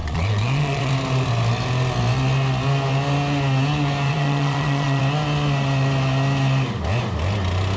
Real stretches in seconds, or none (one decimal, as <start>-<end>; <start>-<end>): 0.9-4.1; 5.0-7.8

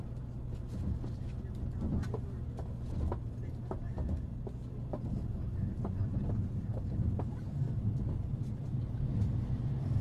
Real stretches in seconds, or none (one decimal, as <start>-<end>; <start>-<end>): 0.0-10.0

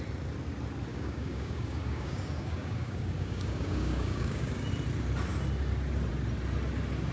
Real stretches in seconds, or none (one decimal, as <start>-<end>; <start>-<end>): 0.0-0.9; 4.7-7.1